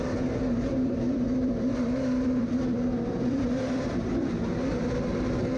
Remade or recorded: remade